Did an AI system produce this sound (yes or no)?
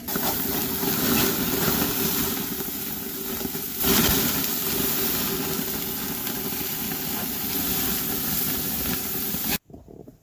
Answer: no